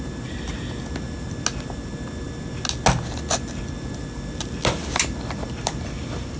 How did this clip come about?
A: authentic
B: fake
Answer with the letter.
A